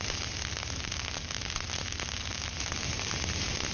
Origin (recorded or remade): recorded